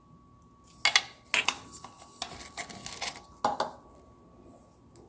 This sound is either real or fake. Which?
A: real